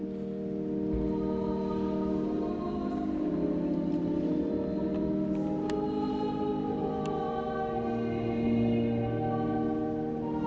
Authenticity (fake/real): real